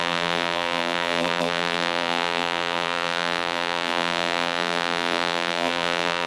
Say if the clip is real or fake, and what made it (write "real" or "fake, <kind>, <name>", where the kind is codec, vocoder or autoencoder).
fake, vocoder, BigVGAN v2